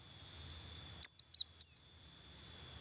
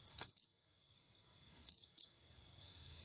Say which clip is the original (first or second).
first